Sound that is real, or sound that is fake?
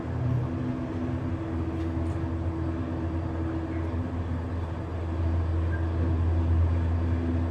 real